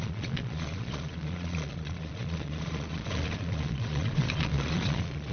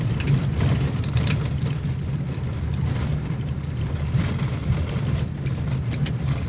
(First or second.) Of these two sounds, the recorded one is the second